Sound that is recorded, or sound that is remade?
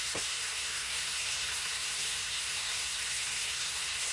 remade